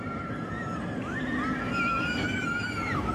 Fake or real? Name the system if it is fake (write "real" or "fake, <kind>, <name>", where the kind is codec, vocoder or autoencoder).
real